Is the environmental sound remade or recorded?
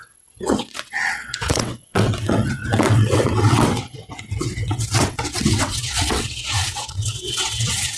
remade